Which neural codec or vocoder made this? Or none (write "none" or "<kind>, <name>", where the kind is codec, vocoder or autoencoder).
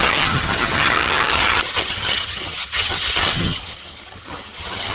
vocoder, HiFi-GAN